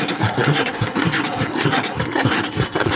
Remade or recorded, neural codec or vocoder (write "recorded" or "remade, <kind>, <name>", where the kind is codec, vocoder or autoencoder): remade, codec, SNAC